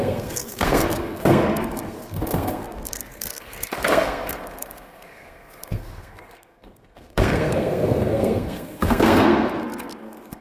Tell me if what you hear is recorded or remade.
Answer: remade